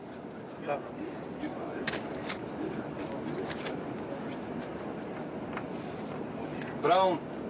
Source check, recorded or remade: recorded